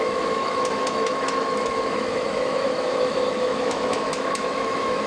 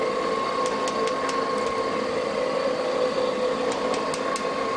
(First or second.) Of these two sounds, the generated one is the first